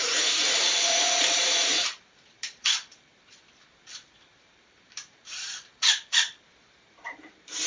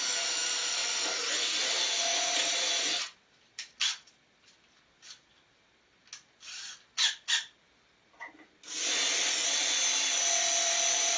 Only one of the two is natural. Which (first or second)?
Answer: second